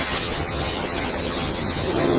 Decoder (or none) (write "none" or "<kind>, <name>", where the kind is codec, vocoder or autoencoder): vocoder, HiFi-GAN